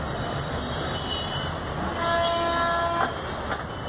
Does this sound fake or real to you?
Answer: real